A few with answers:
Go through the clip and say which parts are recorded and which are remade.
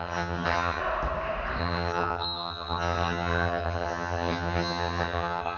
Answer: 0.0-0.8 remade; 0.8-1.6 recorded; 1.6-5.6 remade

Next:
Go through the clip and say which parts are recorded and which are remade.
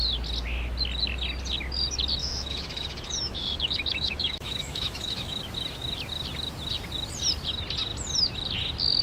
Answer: 0.0-2.2 recorded; 2.2-5.4 remade; 5.4-9.0 recorded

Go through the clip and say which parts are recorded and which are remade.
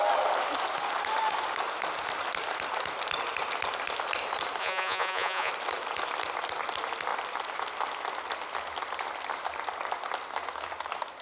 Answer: 0.0-4.6 recorded; 4.6-5.5 remade; 5.5-11.2 recorded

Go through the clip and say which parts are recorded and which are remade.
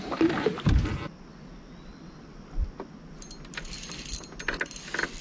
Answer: 0.0-5.2 recorded